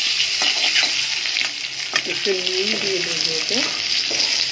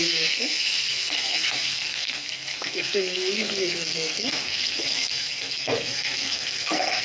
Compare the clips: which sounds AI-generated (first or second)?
second